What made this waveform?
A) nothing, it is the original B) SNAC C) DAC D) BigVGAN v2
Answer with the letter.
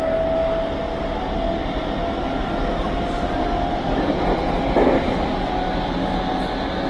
A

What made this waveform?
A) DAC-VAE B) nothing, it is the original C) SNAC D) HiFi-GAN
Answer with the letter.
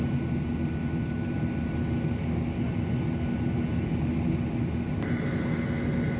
B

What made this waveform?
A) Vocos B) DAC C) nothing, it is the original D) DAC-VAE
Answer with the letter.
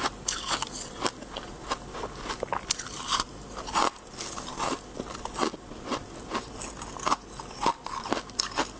C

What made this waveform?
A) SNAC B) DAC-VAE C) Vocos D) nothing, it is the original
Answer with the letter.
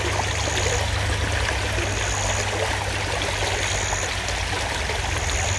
D